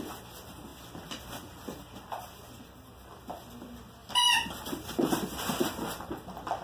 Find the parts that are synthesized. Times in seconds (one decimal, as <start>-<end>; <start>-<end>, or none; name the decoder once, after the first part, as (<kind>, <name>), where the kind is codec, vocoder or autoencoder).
none